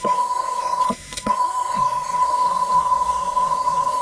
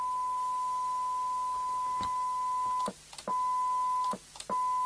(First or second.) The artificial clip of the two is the first